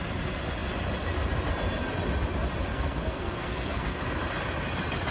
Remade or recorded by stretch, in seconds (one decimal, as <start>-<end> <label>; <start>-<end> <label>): 0.0-2.7 recorded; 2.7-4.0 remade; 4.0-5.1 recorded